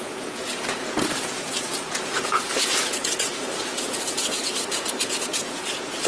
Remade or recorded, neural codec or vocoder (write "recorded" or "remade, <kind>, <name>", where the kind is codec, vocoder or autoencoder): remade, vocoder, Vocos